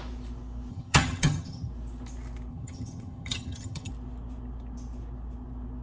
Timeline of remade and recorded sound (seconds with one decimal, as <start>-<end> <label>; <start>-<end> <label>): 0.0-0.7 recorded; 0.7-1.7 remade; 1.7-2.5 recorded; 2.5-3.9 remade; 3.9-5.8 recorded